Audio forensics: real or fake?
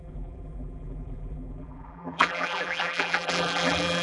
fake